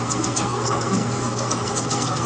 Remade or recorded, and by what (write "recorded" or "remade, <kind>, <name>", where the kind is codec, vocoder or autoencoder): remade, codec, SNAC